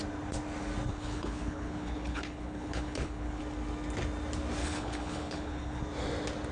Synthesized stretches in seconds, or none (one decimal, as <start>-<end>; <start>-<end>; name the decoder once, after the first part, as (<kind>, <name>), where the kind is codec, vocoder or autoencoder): 0.9-3.4 (codec, HILCodec); 4.6-5.8